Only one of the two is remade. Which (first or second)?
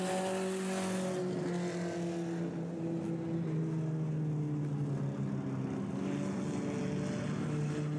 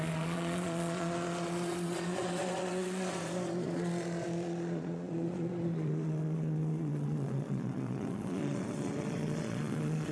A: second